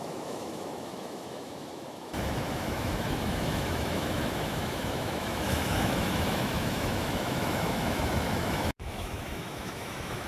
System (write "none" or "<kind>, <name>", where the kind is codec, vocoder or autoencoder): autoencoder, DAC-VAE